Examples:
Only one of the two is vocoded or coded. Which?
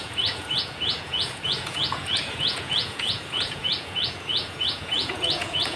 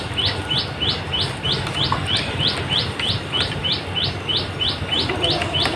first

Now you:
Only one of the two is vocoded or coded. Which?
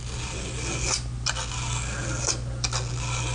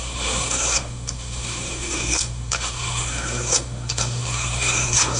second